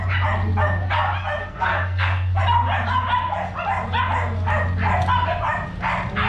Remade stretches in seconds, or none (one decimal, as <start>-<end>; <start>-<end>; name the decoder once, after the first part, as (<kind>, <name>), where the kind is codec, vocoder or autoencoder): 1.4-2.4 (codec, SNAC)